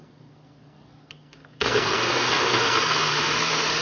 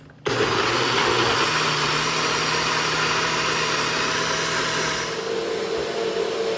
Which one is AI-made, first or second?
first